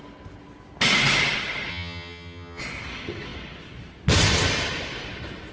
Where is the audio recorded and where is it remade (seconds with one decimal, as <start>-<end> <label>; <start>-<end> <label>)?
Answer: 0.0-1.7 recorded; 1.7-2.6 remade; 2.6-5.5 recorded